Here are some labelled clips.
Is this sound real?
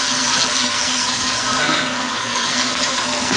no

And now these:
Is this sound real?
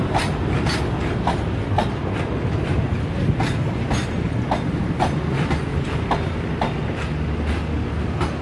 yes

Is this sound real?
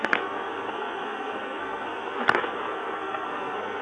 no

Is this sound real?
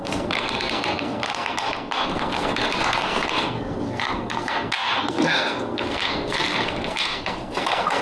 no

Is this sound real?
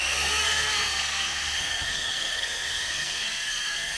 no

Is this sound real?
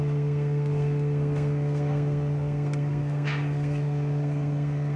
no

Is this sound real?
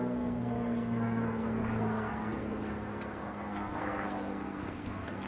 no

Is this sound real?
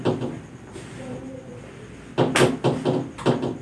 yes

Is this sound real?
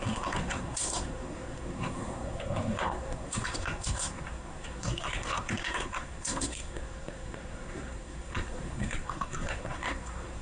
no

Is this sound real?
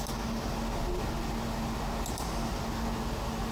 yes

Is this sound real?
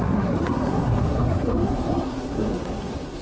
no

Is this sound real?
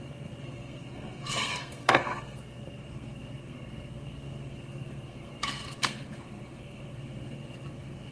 no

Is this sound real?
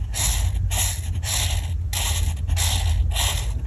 yes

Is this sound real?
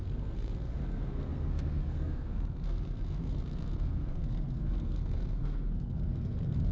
no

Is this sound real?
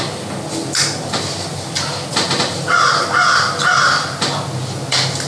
yes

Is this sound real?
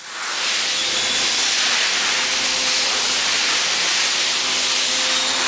yes